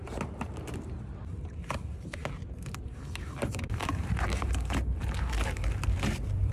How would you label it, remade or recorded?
remade